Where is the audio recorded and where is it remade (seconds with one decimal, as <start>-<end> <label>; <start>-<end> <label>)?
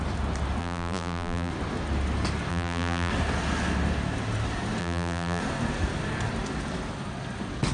0.0-0.6 recorded; 0.6-1.5 remade; 1.5-2.5 recorded; 2.5-3.1 remade; 3.1-4.8 recorded; 4.8-5.4 remade; 5.4-7.7 recorded